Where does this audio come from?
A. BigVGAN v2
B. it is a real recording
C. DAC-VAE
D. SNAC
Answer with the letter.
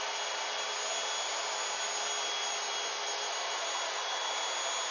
B